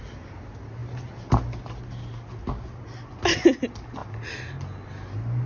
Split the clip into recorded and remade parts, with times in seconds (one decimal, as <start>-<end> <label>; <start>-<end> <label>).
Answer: 0.0-5.5 recorded